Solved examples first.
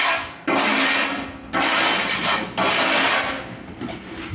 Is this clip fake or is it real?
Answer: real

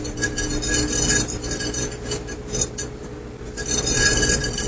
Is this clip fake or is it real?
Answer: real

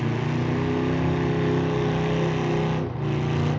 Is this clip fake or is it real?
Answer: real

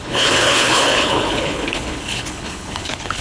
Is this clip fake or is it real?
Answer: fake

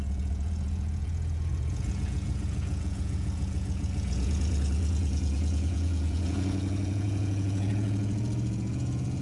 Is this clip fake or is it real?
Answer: fake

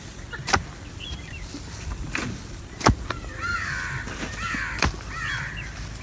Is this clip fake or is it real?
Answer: fake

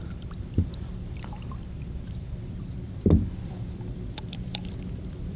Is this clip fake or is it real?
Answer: fake